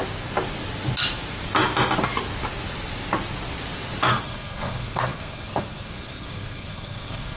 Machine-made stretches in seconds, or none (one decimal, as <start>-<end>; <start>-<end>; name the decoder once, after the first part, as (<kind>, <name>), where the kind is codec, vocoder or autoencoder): 4.1-7.4 (codec, SNAC)